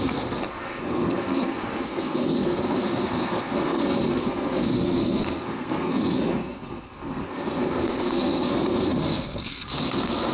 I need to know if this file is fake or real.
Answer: fake